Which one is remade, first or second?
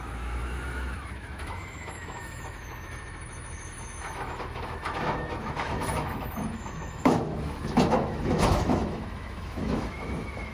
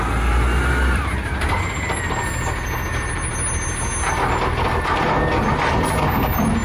first